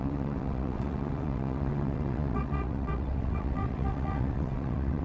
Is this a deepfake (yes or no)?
yes